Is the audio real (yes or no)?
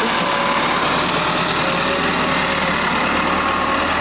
yes